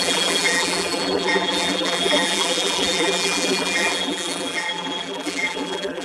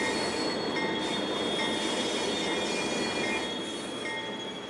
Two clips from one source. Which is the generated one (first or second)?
first